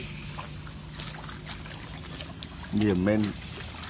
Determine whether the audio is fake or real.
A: real